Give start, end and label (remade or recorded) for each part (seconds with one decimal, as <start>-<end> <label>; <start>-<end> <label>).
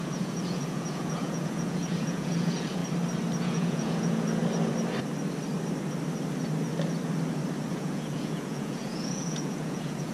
0.0-2.8 remade; 2.8-3.4 recorded; 3.4-4.4 remade; 4.4-7.7 recorded; 7.7-10.1 remade